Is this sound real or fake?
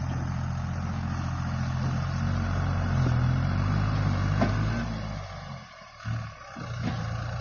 real